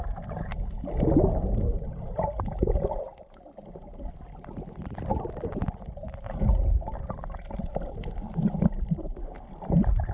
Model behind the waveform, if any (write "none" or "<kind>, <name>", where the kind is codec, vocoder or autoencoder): none